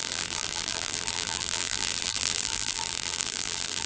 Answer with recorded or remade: remade